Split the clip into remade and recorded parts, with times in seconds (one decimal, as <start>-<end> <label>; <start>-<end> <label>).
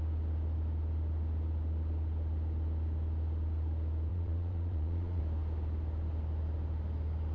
0.0-4.1 recorded; 4.1-5.2 remade; 5.2-7.3 recorded